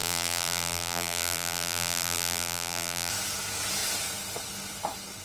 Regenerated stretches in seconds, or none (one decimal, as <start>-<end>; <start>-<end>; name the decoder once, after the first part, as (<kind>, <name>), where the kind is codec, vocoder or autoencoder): 0.0-3.1 (vocoder, BigVGAN v2)